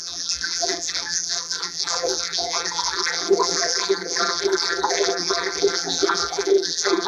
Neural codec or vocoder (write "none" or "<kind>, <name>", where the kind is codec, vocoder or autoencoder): vocoder, BigVGAN v2